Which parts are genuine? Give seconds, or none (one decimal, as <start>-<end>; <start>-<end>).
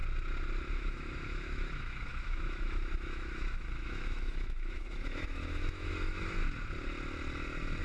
0.0-0.7; 6.4-7.8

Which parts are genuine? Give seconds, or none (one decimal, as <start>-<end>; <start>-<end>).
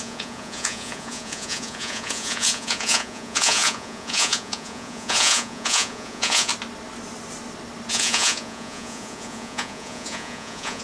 6.5-7.9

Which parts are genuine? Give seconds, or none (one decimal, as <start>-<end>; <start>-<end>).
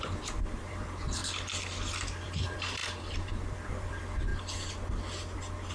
1.2-2.2; 4.3-5.7